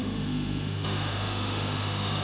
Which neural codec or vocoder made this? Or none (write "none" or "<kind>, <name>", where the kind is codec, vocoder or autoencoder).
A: autoencoder, DAC-VAE